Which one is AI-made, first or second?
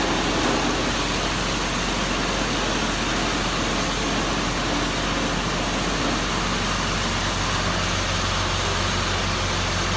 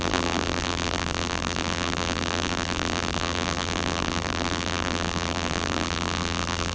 second